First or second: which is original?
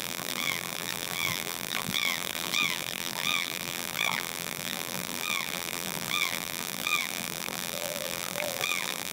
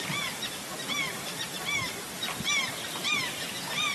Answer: second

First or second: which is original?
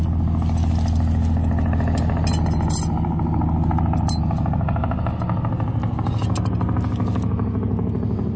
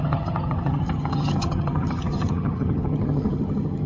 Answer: first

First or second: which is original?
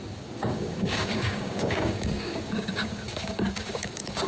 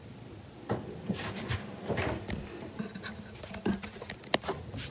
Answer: second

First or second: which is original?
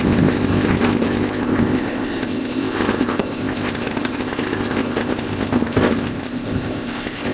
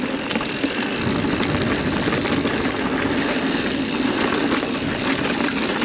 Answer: second